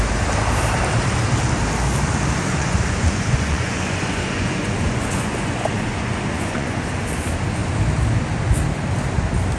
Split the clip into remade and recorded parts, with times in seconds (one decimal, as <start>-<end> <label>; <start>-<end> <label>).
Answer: 0.0-2.5 recorded; 2.5-6.9 remade; 6.9-9.6 recorded